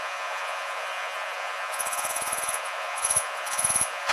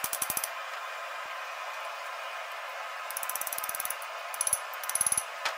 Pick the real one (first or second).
second